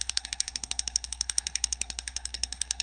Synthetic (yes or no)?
yes